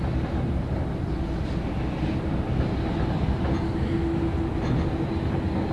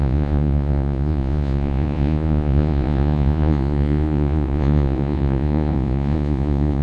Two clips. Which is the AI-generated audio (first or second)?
second